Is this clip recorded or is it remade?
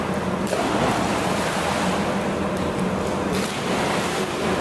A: recorded